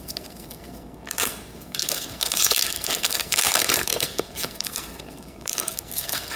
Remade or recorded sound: remade